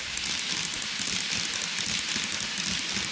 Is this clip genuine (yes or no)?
yes